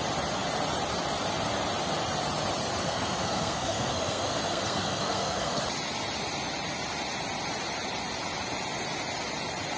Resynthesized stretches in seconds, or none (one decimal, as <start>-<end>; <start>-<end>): 2.8-5.6